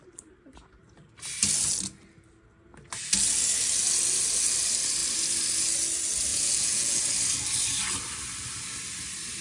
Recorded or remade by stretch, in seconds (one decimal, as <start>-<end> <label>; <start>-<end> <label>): 0.0-6.3 recorded; 6.3-7.0 remade; 7.0-9.4 recorded